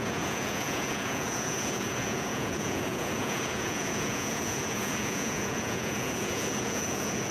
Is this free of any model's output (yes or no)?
no